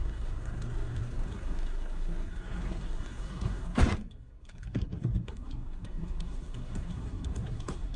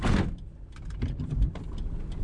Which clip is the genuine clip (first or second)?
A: second